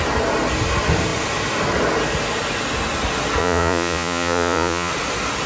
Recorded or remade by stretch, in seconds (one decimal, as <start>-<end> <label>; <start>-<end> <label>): 0.0-3.4 recorded; 3.4-4.9 remade; 4.9-5.5 recorded